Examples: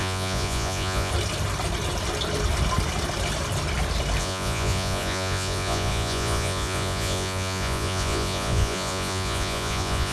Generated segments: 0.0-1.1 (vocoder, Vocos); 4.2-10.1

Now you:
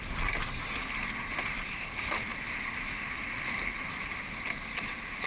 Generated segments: none

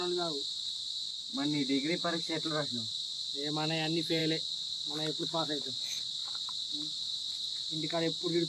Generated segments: none

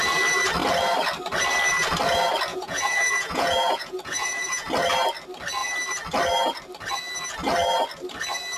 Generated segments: 2.5-4.7 (vocoder, Vocos)